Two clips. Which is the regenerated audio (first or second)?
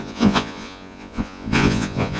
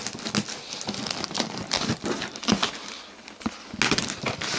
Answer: first